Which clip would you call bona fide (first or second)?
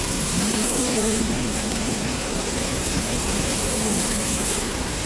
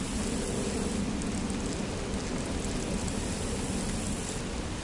second